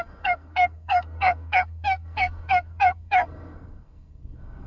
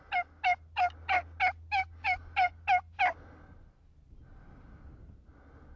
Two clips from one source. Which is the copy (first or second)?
first